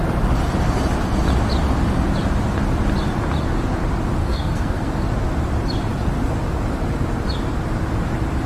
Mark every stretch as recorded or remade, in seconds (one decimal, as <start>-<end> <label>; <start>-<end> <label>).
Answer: 0.0-4.2 recorded; 4.2-4.9 remade; 4.9-8.5 recorded